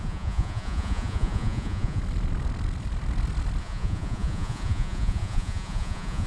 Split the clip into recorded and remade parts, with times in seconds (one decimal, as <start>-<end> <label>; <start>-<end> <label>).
0.0-2.0 remade; 2.0-3.6 recorded; 3.6-6.3 remade